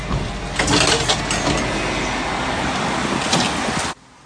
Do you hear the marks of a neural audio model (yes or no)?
no